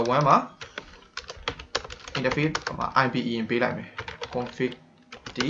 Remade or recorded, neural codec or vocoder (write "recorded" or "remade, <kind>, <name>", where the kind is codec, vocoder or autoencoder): recorded